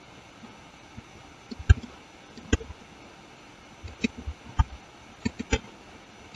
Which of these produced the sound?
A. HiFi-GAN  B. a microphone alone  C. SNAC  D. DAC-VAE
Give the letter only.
B